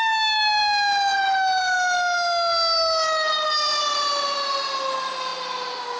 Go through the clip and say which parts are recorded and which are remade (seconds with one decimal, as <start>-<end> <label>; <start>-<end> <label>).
0.0-6.0 recorded

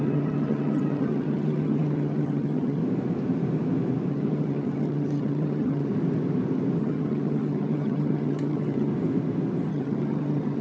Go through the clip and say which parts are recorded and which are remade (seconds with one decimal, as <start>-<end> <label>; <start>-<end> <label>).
0.0-2.8 remade; 2.8-4.1 recorded; 4.1-5.9 remade; 5.9-6.8 recorded; 6.8-8.9 remade; 8.9-9.7 recorded; 9.7-10.6 remade